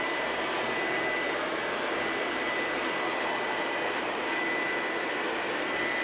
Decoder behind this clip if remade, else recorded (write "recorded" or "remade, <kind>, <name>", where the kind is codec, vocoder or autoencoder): recorded